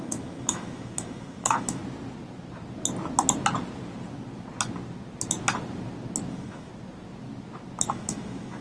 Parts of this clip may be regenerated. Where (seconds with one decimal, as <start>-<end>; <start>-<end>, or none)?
0.0-1.8; 6.3-6.7; 7.9-8.6